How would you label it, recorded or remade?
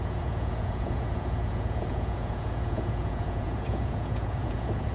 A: remade